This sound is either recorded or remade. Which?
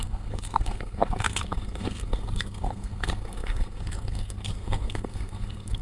remade